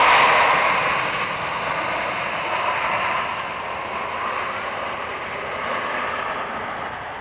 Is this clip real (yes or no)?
yes